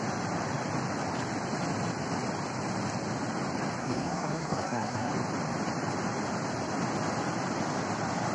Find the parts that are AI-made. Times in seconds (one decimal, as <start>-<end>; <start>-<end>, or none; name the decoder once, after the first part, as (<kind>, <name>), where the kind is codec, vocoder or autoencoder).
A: 3.8-5.1 (codec, SNAC)

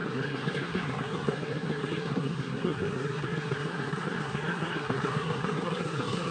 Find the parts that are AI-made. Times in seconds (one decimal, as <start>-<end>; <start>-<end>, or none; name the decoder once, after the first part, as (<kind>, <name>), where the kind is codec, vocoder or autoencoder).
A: 0.0-6.3 (codec, SNAC)

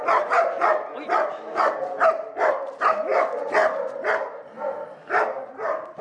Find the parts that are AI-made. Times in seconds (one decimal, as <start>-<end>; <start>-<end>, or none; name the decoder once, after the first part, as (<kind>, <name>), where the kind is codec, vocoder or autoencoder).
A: none

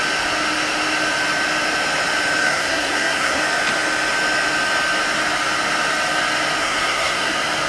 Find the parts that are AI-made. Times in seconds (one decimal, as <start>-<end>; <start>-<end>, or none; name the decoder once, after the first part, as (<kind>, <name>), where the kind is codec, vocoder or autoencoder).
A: 2.4-3.4 (codec, SNAC); 6.6-7.3

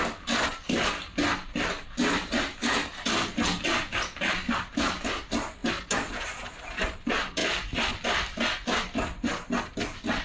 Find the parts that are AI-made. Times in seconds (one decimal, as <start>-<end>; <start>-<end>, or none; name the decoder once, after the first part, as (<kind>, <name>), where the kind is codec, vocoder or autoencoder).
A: none